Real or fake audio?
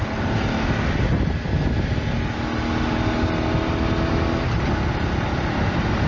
real